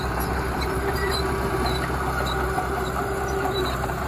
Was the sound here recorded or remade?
remade